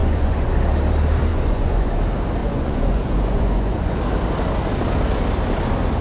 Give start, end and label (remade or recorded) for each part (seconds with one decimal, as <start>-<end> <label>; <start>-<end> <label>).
0.0-0.6 remade; 0.6-1.3 recorded; 1.3-2.0 remade; 2.0-2.4 recorded; 2.4-4.0 remade; 4.0-6.0 recorded

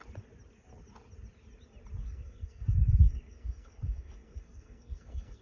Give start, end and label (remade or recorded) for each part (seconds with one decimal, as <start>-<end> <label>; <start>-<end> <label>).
0.0-2.0 recorded; 2.0-5.4 remade

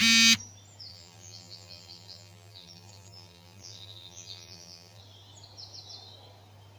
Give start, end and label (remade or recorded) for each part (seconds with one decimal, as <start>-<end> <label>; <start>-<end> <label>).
0.0-0.9 recorded; 0.9-5.0 remade; 5.0-6.8 recorded

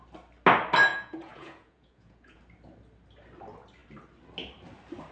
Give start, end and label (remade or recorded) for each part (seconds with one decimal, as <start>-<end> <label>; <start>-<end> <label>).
0.0-0.9 recorded; 0.9-2.4 remade; 2.4-5.1 recorded

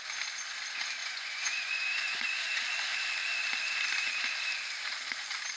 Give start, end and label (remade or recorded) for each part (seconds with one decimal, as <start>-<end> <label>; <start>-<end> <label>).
0.0-1.0 recorded; 1.0-2.6 remade; 2.6-5.6 recorded

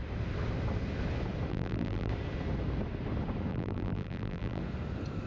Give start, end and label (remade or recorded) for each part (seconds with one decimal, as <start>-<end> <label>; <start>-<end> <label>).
0.0-1.5 recorded; 1.5-2.1 remade; 2.1-3.5 recorded; 3.5-4.6 remade; 4.6-5.3 recorded